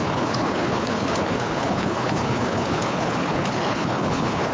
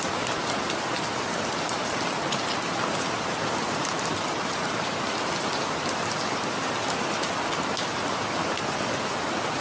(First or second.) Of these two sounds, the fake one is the first